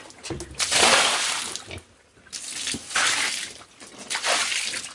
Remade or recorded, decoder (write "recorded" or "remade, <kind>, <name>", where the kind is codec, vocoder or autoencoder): recorded